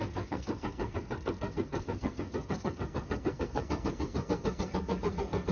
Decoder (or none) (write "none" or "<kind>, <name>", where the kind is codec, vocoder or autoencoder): codec, SNAC